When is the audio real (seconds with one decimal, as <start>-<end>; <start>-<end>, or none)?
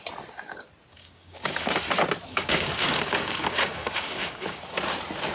0.0-0.9; 1.7-2.3; 4.6-5.3